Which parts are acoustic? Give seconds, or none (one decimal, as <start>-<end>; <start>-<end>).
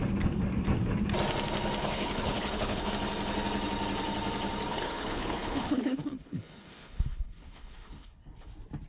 0.0-1.8; 2.9-4.7; 8.5-8.9